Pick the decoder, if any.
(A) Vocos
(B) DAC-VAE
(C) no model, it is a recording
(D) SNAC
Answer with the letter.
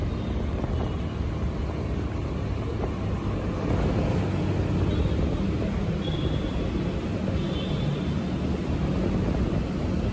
C